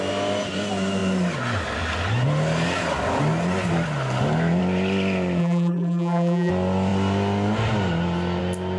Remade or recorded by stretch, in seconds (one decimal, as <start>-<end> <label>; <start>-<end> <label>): 0.0-5.4 recorded; 5.4-6.5 remade; 6.5-8.8 recorded

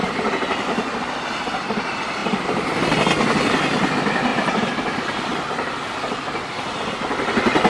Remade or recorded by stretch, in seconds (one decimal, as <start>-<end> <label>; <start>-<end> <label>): 0.0-0.6 remade; 0.6-2.2 recorded; 2.2-2.8 remade; 2.8-4.3 recorded; 4.3-5.4 remade; 5.4-7.7 recorded

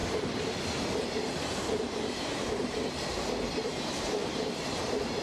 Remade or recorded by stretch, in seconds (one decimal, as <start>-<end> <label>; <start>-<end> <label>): 0.0-1.0 recorded; 1.0-5.2 remade

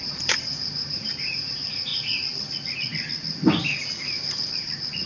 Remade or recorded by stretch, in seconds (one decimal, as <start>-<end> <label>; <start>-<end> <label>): 0.0-1.9 remade; 1.9-5.1 recorded

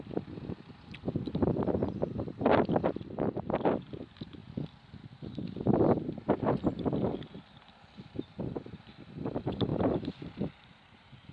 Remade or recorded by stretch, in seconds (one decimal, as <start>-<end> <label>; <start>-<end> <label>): 0.0-4.4 remade; 4.4-8.4 recorded; 8.4-11.3 remade